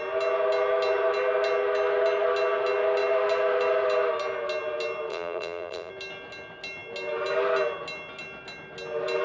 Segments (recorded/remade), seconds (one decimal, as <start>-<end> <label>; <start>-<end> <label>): 0.0-5.1 recorded; 5.1-5.9 remade; 5.9-9.2 recorded